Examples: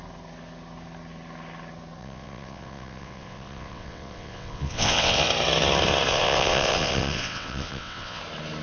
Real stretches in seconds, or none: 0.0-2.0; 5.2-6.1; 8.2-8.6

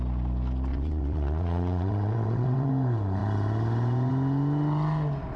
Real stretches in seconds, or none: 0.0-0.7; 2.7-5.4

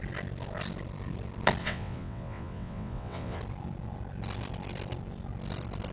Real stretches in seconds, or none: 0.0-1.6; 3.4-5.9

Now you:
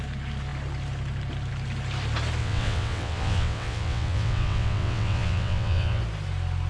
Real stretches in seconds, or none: 0.0-2.4; 6.0-6.7

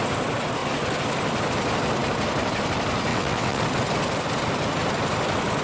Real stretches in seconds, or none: 0.0-3.1; 3.6-5.6

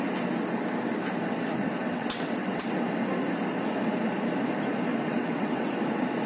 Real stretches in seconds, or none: 0.0-1.8; 2.6-4.9; 5.7-6.3

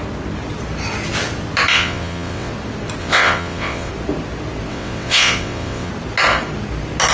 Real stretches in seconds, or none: 0.0-1.7; 2.5-3.0; 3.9-4.7; 5.9-7.1